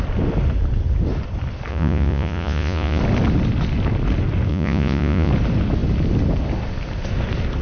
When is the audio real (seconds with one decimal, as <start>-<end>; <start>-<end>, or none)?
0.0-1.7; 3.0-4.5; 5.3-7.6

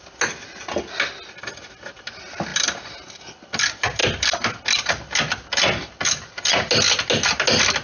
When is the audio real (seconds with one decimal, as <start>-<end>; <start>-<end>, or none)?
0.0-7.8

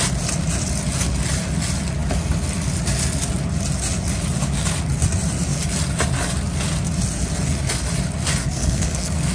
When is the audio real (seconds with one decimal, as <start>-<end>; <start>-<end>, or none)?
0.0-8.4

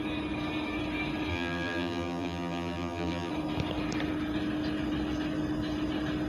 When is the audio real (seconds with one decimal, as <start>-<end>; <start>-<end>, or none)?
0.0-1.3; 3.3-6.3

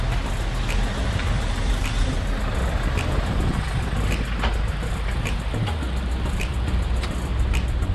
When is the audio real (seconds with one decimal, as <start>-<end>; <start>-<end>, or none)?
0.0-1.0; 2.4-4.7; 6.5-7.9

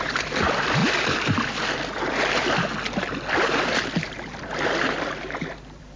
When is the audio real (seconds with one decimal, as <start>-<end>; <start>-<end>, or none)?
0.8-4.4

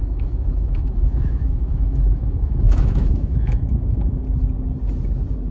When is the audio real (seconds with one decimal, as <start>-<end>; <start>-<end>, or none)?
4.2-5.5